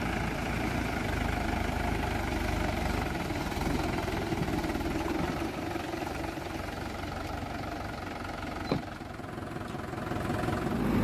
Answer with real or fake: fake